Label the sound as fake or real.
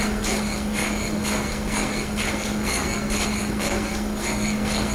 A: fake